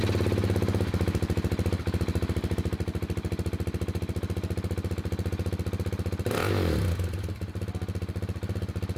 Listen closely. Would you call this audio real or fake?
real